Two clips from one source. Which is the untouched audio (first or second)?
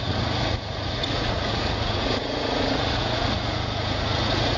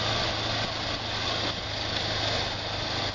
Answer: second